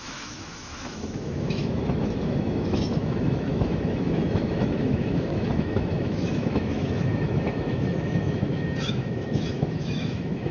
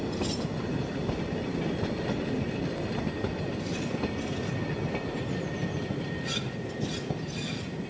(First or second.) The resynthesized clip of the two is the first